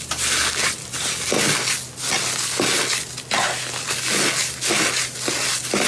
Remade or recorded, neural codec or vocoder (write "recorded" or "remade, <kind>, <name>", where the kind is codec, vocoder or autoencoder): recorded